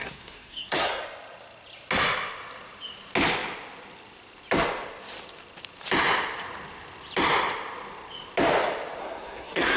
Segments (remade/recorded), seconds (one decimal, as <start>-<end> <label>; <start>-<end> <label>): 0.0-1.0 remade; 1.0-9.0 recorded; 9.0-9.8 remade